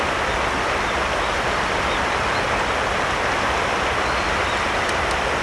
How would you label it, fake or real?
real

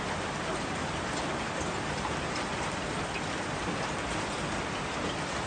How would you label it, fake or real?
real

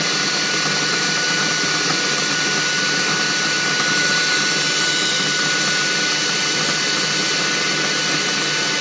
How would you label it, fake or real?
real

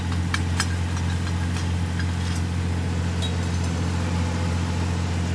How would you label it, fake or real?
real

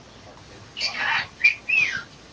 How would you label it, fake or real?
real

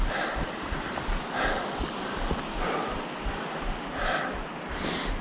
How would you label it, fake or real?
real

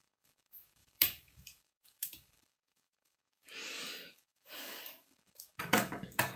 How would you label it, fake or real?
fake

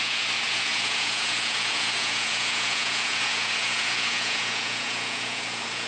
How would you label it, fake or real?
fake